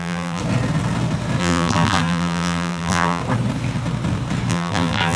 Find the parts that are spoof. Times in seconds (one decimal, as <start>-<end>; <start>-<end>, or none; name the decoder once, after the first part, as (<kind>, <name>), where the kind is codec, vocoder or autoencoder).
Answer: 0.0-0.4 (vocoder, BigVGAN v2); 1.4-3.2; 4.5-5.2